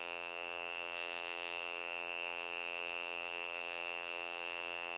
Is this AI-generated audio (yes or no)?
yes